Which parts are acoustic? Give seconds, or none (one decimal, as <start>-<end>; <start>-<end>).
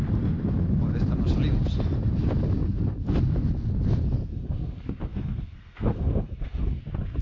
0.0-4.3; 6.8-7.2